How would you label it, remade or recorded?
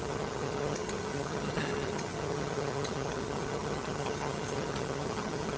remade